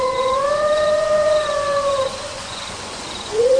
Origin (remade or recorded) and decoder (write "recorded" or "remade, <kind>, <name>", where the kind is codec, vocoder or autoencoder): remade, vocoder, Vocos